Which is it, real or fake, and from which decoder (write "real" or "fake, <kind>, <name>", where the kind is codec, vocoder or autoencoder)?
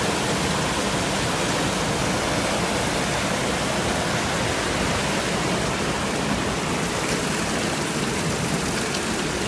real